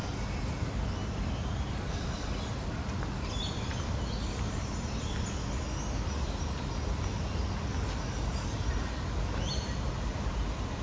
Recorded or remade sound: recorded